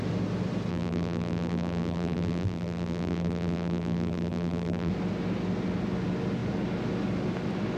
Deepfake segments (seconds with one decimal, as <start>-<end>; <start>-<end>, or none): 0.7-4.9